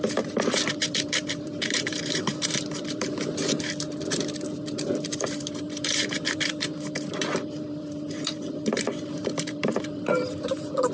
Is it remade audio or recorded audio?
remade